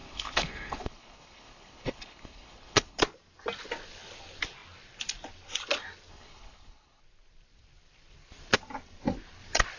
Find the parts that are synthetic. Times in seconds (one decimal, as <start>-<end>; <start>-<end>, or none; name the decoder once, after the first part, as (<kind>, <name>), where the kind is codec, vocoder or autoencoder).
0.0-3.0 (codec, HILCodec); 6.1-7.0